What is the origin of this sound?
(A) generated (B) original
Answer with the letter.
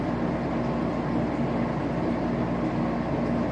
B